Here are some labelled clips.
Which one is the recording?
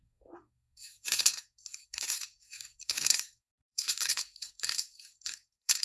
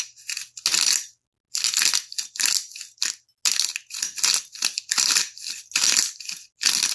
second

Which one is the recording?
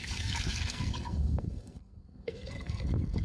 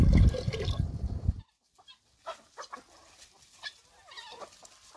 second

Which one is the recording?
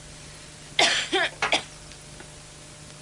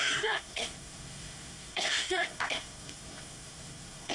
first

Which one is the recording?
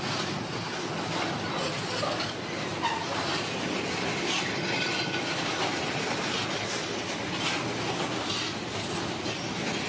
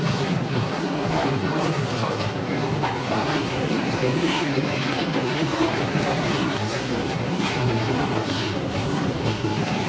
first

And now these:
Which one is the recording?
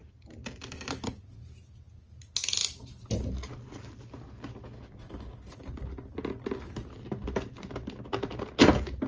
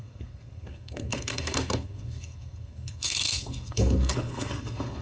first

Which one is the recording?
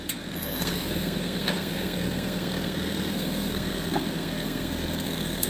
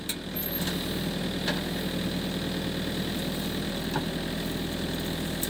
second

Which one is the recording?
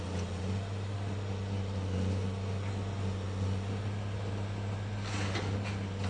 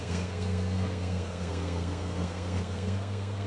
first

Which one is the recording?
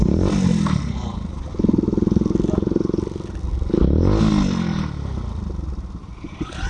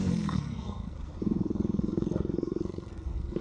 first